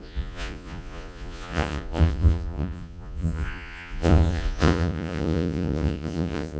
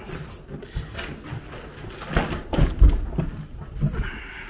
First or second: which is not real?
first